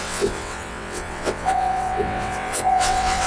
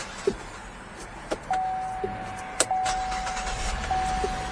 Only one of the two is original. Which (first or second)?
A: second